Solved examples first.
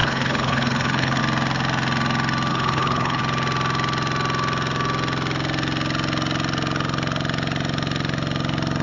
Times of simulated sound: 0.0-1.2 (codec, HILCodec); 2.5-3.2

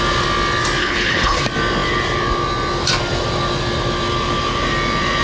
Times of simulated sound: 0.8-1.4 (codec, HILCodec)

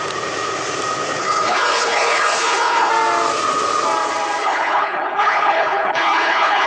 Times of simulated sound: 1.2-2.9 (codec, HILCodec); 4.4-6.7